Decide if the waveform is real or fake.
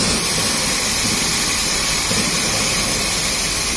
real